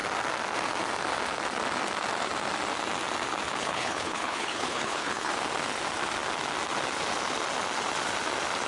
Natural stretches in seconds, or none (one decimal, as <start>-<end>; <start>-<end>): 0.0-3.6; 5.3-8.7